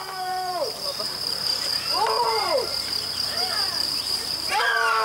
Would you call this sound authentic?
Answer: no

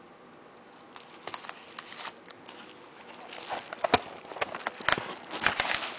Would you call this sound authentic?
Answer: yes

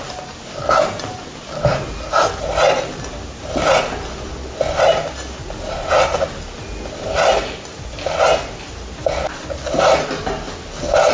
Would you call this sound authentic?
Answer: yes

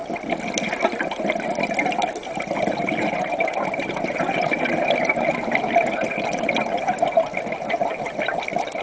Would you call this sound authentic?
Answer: yes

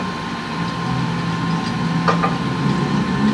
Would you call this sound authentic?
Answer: yes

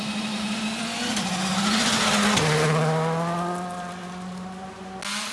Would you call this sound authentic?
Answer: yes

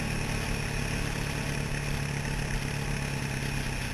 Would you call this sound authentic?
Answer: yes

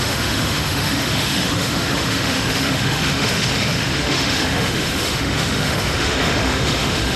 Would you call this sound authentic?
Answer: no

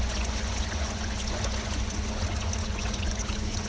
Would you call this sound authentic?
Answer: no